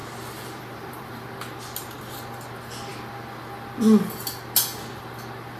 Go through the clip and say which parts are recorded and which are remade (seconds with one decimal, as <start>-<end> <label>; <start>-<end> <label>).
0.0-1.1 remade; 1.1-5.6 recorded